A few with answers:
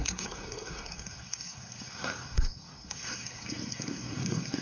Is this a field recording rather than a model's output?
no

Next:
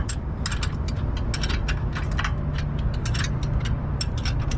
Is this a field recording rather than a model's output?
yes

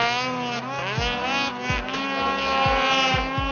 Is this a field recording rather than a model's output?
yes